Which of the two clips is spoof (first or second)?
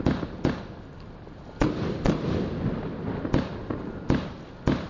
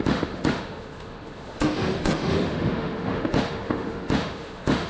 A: second